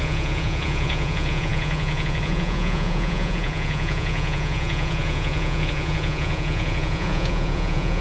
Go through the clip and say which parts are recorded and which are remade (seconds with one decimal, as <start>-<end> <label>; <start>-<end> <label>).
0.0-8.0 remade